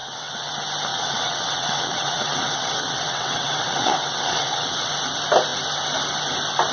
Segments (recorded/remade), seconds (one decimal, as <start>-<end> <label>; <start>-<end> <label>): 0.0-0.5 remade; 0.5-0.9 recorded; 0.9-4.9 remade; 4.9-6.7 recorded